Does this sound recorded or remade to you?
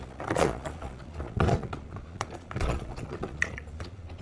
remade